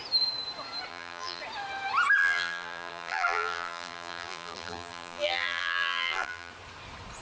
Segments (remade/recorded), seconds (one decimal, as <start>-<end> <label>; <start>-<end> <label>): 0.0-0.9 recorded; 0.9-1.4 remade; 1.4-2.2 recorded; 2.2-6.5 remade; 6.5-7.2 recorded